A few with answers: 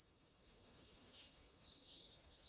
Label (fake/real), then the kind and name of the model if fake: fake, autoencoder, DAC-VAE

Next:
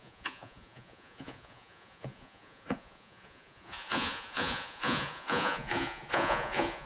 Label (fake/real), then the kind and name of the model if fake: fake, vocoder, Vocos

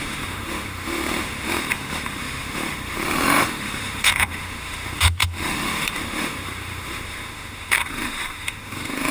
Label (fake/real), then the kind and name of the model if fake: fake, autoencoder, DAC-VAE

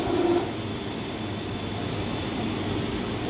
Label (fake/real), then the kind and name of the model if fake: real